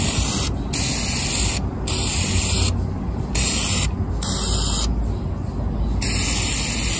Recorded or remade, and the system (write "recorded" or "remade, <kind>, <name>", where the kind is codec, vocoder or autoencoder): recorded